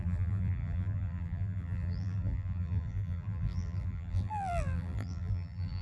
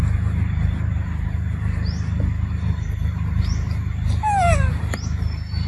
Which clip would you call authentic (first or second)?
second